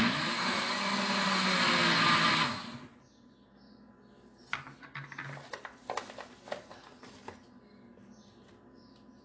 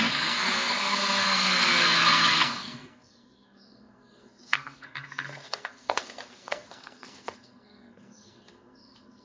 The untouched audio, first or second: first